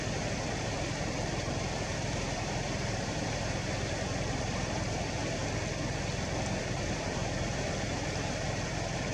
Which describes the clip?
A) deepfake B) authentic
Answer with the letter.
A